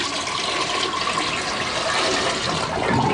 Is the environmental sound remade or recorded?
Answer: recorded